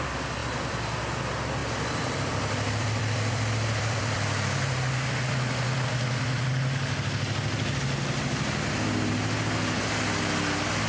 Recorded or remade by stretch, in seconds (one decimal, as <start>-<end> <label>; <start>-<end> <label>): 0.0-0.4 recorded; 0.4-1.2 remade; 1.2-1.6 recorded; 1.6-6.4 remade; 6.4-10.9 recorded